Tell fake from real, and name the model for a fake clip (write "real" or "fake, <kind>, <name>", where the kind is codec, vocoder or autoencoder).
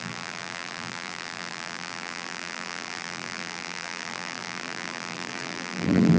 fake, vocoder, BigVGAN v2